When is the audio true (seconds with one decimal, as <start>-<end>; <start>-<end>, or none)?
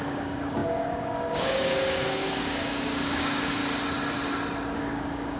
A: 3.6-4.7